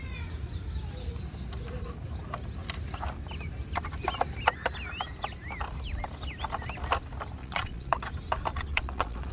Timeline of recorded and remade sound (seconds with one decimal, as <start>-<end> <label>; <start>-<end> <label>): 0.0-7.4 recorded; 7.4-8.0 remade; 8.0-8.5 recorded; 8.5-9.3 remade